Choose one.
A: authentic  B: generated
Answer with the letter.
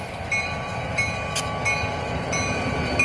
A